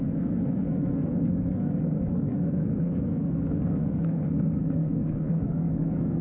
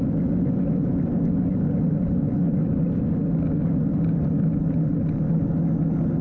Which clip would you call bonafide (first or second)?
second